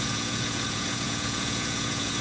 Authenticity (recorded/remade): remade